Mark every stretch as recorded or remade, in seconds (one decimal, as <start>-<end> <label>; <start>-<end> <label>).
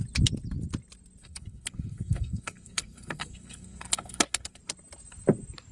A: 0.0-1.2 recorded; 1.2-4.6 remade; 4.6-5.7 recorded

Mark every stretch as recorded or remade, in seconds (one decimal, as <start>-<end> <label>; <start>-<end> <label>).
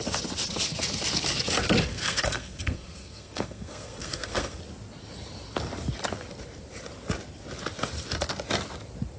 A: 0.0-1.9 recorded; 1.9-4.6 remade; 4.6-9.2 recorded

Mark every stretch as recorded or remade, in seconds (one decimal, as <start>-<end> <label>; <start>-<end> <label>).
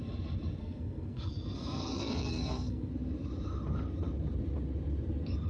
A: 0.0-0.6 recorded; 0.6-2.9 remade; 2.9-5.5 recorded